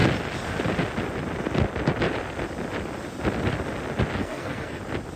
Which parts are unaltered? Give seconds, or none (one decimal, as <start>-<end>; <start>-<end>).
0.0-4.2; 4.8-5.2